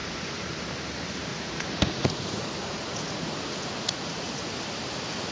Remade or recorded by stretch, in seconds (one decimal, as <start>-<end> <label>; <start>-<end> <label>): 0.0-0.6 remade; 0.6-1.3 recorded; 1.3-4.5 remade; 4.5-5.3 recorded